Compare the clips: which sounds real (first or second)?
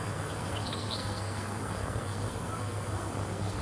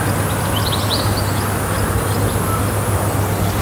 second